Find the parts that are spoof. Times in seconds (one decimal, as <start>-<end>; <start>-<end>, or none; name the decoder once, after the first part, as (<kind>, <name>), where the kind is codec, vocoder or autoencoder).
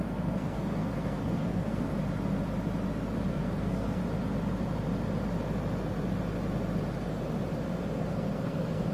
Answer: 0.0-2.0 (codec, SNAC); 3.3-4.0; 8.0-8.9